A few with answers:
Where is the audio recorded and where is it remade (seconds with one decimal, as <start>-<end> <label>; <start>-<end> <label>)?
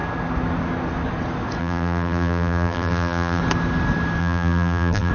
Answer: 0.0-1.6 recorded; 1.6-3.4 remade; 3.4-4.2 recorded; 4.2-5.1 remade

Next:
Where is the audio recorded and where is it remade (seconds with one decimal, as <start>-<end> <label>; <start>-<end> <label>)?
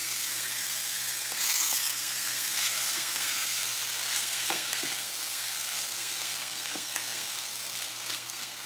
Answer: 0.0-8.7 remade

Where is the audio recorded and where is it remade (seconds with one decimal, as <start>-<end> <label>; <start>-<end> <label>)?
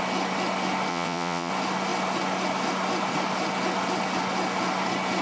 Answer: 0.0-0.9 recorded; 0.9-1.5 remade; 1.5-5.2 recorded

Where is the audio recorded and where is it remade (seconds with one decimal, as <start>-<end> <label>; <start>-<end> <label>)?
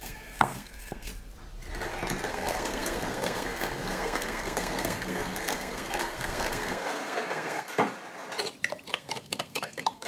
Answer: 0.0-1.1 remade; 1.1-2.3 recorded; 2.3-7.7 remade; 7.7-8.9 recorded; 8.9-10.1 remade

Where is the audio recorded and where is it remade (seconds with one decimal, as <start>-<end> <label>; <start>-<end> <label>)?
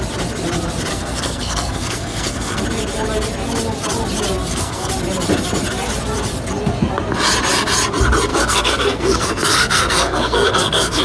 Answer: 0.0-0.9 recorded; 0.9-2.6 remade; 2.6-4.4 recorded; 4.4-4.9 remade; 4.9-8.3 recorded; 8.3-11.0 remade